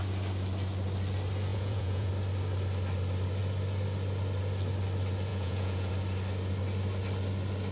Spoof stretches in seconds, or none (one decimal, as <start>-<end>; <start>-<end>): 1.5-2.1; 5.3-5.9